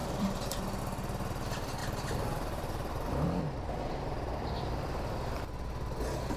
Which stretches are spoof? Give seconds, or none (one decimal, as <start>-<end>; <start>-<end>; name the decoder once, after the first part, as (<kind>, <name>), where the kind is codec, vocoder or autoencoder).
0.0-0.8 (vocoder, BigVGAN v2); 1.8-3.4